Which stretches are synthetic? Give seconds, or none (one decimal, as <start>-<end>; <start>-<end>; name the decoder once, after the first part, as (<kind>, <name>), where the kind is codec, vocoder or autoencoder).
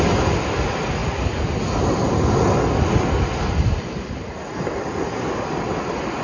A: none